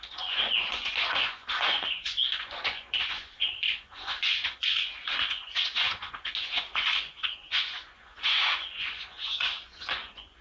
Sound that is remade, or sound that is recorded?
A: remade